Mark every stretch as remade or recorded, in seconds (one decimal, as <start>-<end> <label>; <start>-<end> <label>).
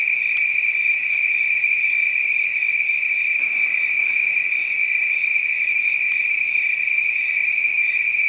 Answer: 0.0-2.5 remade; 2.5-3.1 recorded; 3.1-4.2 remade; 4.2-4.9 recorded; 4.9-8.3 remade